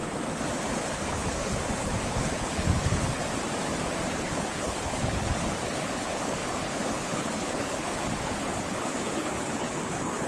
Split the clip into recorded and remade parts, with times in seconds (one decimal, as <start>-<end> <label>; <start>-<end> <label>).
0.0-0.7 recorded; 0.7-3.2 remade; 3.2-4.1 recorded; 4.1-10.3 remade